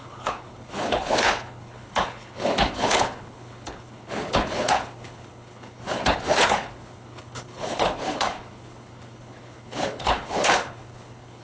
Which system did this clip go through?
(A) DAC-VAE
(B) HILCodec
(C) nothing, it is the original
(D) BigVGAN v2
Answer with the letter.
B